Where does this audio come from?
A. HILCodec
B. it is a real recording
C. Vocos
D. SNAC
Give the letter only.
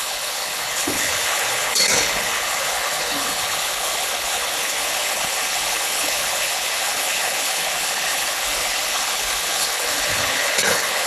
A